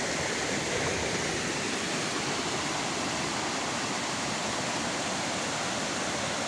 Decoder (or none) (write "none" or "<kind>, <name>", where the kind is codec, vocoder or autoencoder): none